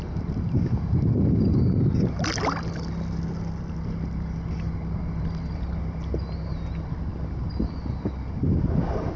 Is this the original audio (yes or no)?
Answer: yes